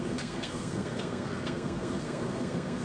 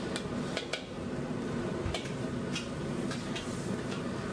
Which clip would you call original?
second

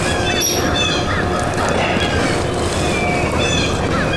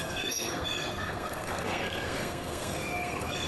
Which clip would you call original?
first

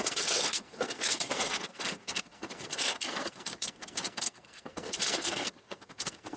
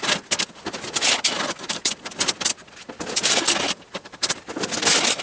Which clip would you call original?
second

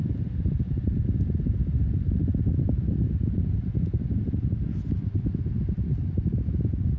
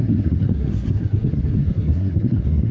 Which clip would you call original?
first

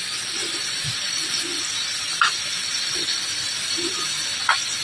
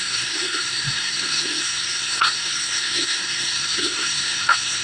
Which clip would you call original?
first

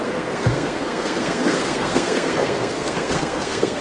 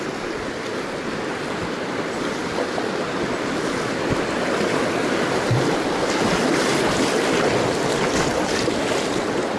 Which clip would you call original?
second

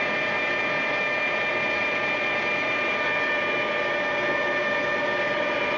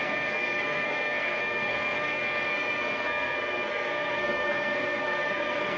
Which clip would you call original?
first